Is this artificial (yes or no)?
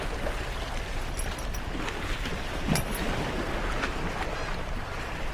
no